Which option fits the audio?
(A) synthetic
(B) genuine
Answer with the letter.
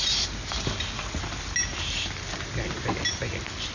B